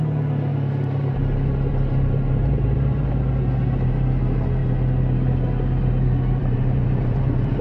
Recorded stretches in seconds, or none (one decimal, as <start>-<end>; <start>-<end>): 0.0-0.5; 1.2-1.7; 3.1-6.4